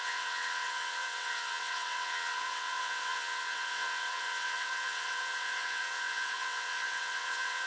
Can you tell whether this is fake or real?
fake